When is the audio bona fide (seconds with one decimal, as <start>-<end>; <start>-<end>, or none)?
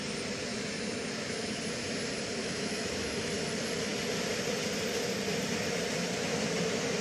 0.0-0.5; 1.5-2.4; 3.3-7.0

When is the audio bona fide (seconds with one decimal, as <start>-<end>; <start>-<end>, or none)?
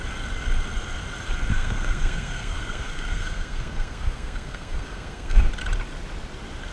0.0-1.5; 5.5-6.7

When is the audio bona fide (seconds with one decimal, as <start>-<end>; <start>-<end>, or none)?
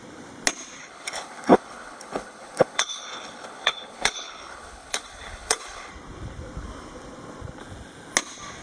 0.0-0.8; 5.9-8.6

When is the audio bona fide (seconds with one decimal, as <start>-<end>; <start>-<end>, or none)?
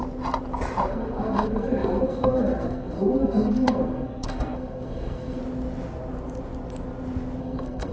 0.0-0.9; 5.4-7.4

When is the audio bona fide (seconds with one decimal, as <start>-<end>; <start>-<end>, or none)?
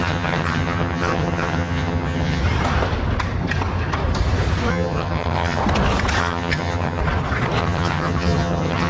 2.4-4.7; 5.6-6.2; 7.0-7.6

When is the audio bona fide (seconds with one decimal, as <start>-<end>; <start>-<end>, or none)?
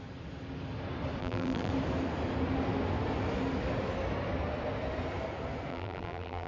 0.0-1.2; 1.7-5.7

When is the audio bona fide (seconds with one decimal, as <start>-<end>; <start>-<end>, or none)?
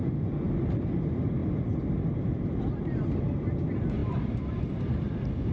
0.0-5.5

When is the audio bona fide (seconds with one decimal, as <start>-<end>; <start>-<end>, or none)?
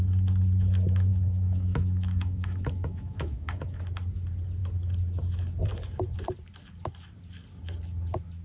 0.0-1.1; 3.8-8.4